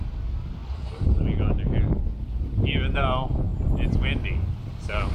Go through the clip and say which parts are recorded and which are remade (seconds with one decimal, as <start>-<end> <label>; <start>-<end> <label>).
0.0-5.1 recorded